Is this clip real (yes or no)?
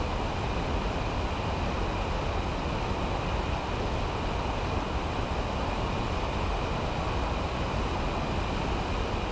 yes